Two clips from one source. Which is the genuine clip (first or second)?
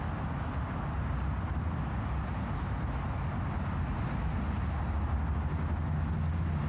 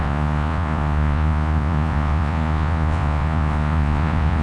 first